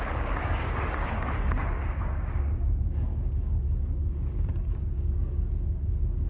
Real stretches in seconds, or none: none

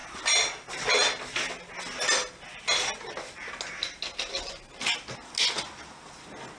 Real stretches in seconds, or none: 0.0-6.6

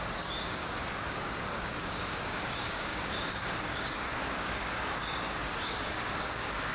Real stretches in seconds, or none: none

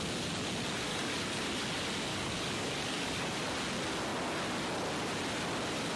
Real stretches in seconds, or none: 0.0-0.9; 1.4-2.1; 3.4-6.0